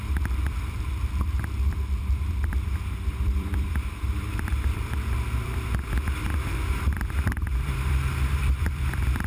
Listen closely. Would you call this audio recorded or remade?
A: remade